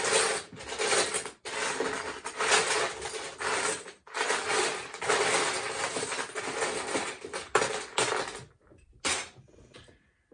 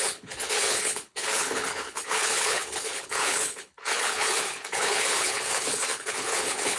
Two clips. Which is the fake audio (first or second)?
second